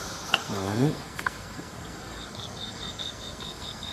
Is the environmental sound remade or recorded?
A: remade